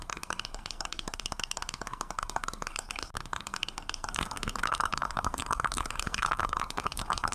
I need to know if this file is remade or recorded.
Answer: remade